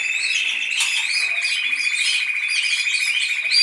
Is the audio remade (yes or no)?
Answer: no